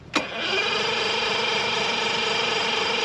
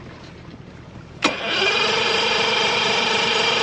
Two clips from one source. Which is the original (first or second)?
first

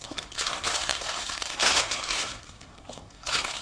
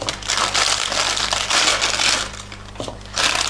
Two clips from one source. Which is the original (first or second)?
second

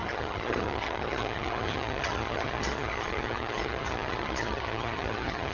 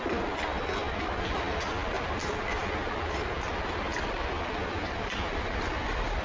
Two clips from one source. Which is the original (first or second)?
second